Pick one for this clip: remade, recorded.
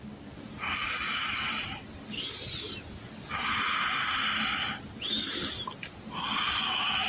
recorded